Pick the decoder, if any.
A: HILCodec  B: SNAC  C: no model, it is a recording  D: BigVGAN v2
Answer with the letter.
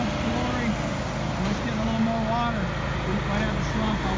C